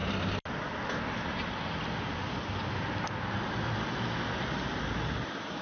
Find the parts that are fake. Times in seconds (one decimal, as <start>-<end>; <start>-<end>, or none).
none